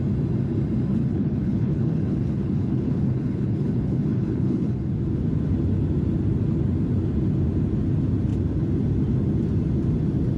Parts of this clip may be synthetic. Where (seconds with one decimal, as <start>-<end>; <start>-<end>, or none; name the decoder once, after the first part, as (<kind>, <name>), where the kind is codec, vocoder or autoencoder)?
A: 0.9-4.8 (codec, HILCodec)